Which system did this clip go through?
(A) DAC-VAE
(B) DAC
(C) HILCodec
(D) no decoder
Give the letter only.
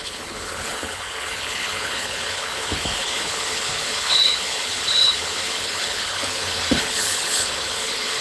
C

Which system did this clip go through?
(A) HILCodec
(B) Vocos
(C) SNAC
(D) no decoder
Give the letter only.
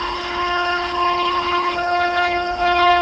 A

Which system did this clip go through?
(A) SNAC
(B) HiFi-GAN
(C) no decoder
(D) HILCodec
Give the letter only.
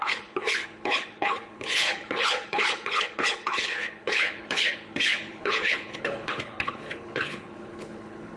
D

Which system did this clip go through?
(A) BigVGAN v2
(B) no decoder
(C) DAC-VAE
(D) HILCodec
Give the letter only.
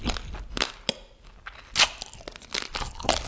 B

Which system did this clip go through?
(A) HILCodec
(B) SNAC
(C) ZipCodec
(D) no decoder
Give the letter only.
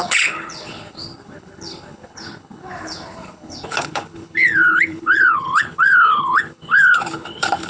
A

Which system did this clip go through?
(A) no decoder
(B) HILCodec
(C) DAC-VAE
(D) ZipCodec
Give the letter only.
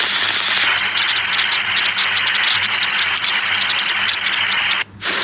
A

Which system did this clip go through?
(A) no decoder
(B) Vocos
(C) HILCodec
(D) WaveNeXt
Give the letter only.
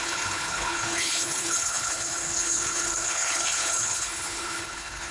C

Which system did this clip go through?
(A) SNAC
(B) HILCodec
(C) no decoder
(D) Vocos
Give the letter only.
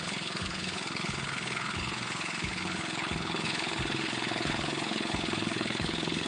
B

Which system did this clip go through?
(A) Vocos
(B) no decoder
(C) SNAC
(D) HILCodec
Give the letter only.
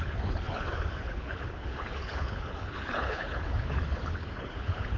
D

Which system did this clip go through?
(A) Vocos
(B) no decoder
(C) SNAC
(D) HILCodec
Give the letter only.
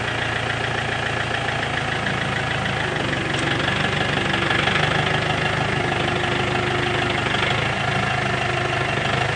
B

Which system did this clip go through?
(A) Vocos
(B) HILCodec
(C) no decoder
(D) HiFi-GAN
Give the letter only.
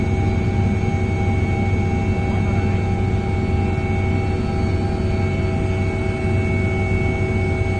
C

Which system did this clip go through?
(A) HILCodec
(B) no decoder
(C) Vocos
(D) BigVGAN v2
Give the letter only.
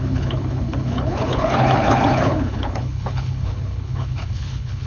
A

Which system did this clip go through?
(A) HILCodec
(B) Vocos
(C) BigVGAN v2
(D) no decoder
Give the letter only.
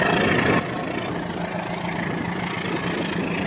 D